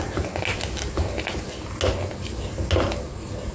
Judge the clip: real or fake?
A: real